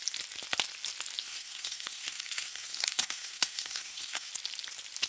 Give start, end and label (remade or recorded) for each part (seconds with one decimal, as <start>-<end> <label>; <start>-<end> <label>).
0.0-1.2 recorded; 1.2-4.3 remade; 4.3-5.1 recorded